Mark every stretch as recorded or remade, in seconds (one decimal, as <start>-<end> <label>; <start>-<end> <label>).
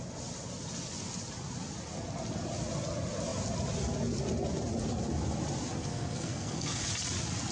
0.0-5.8 recorded; 5.8-6.8 remade; 6.8-7.5 recorded